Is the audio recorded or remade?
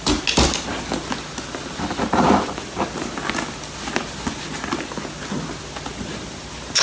recorded